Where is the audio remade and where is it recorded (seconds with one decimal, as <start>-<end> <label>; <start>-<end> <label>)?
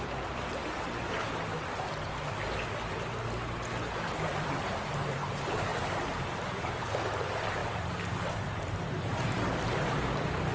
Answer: 0.0-0.6 remade; 0.6-4.0 recorded; 4.0-5.7 remade; 5.7-6.2 recorded; 6.2-7.6 remade; 7.6-8.3 recorded; 8.3-10.5 remade